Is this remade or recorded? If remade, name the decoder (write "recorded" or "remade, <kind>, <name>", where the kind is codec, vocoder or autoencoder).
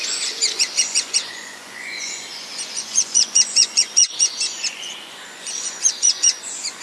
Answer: remade, vocoder, Vocos